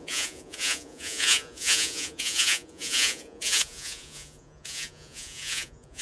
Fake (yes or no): yes